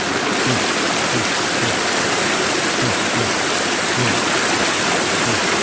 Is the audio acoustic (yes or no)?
yes